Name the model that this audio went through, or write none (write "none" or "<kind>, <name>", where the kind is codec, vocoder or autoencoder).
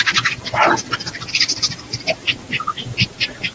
vocoder, BigVGAN v2